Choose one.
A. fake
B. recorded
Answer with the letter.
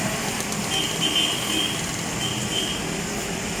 B